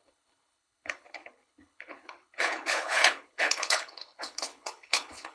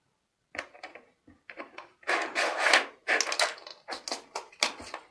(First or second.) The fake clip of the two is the first